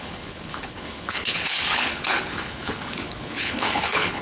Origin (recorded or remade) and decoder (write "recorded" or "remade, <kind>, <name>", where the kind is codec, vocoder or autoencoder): remade, codec, HILCodec